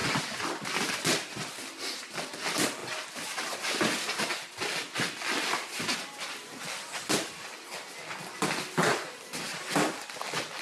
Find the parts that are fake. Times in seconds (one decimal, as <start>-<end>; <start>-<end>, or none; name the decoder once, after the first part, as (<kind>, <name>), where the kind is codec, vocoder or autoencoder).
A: none